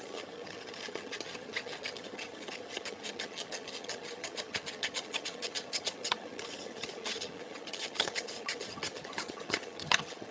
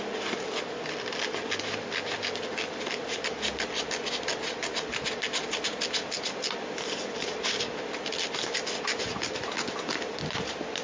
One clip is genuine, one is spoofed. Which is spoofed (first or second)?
first